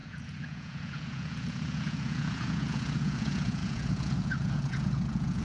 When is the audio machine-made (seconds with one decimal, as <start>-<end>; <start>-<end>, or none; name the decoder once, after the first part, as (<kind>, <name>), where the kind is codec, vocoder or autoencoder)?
0.0-5.4 (vocoder, Vocos)